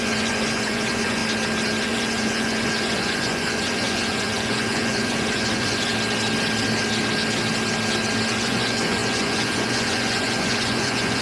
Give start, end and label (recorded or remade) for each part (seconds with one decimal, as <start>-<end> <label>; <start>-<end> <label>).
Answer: 0.0-1.2 remade; 1.2-1.8 recorded; 1.8-5.9 remade; 5.9-8.3 recorded; 8.3-11.2 remade